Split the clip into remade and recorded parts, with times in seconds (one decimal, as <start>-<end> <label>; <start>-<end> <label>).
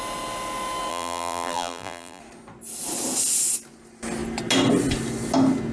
0.0-0.9 recorded; 0.9-2.2 remade; 2.2-5.7 recorded